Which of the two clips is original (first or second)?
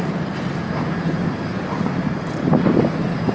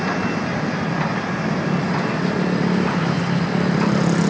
second